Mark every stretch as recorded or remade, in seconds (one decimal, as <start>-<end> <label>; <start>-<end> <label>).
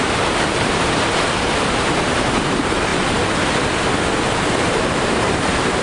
0.0-2.9 remade; 2.9-4.6 recorded; 4.6-5.8 remade